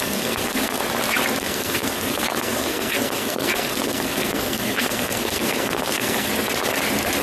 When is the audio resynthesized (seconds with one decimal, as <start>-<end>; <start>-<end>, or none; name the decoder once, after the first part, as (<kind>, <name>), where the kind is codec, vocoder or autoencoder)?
0.0-0.8 (codec, SNAC); 1.4-6.3